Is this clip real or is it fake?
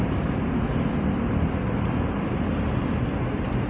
fake